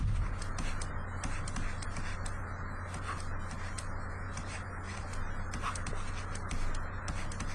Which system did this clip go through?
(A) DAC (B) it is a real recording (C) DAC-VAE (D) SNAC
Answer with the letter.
B